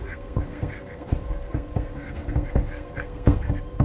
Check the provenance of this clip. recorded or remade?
remade